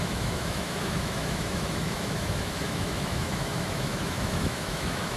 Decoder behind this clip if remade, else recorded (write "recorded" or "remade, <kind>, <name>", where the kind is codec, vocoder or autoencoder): remade, autoencoder, DAC-VAE